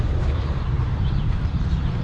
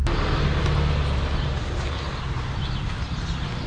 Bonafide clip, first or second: second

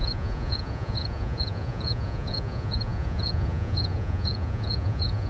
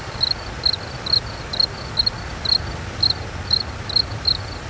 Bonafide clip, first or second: second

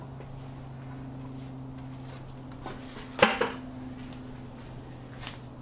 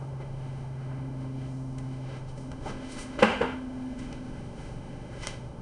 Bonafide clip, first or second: first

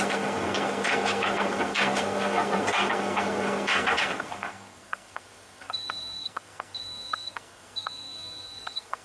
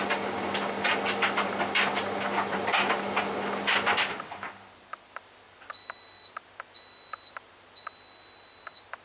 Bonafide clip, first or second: second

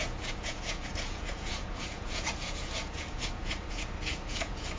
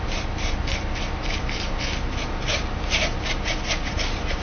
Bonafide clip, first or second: second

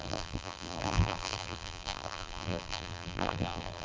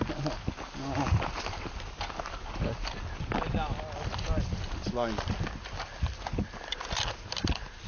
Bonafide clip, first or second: second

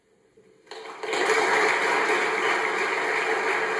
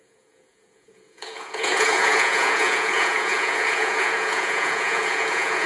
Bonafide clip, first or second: first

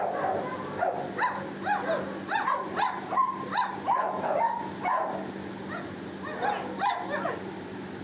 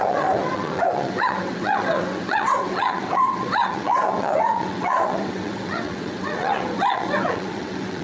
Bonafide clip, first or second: first